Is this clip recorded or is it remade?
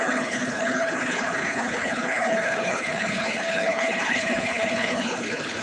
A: remade